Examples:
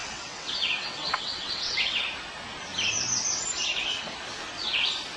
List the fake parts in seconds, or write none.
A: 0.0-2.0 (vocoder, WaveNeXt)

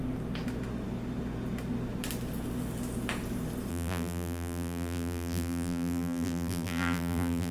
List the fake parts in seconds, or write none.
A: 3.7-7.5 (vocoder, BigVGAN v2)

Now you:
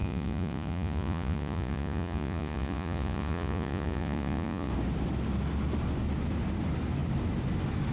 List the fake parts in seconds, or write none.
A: 0.0-4.7 (vocoder, Vocos)

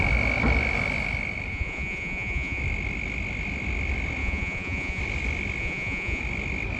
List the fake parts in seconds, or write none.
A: 1.5-2.6 (vocoder, Vocos); 4.2-5.0; 5.6-6.2